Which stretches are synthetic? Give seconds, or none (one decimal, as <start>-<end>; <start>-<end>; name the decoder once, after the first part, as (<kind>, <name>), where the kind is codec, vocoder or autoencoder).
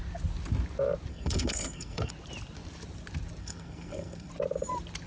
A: 1.1-2.1 (codec, SNAC); 3.4-4.3